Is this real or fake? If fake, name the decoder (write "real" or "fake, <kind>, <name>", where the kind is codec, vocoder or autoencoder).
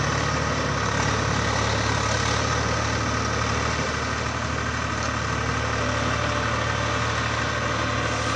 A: real